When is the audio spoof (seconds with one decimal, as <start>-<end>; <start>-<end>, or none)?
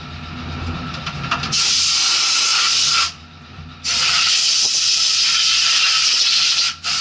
2.5-7.0